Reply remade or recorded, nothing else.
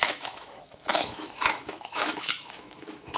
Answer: remade